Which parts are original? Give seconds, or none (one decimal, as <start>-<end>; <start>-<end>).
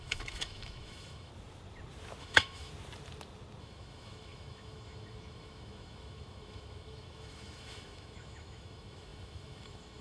1.3-2.2; 2.7-3.6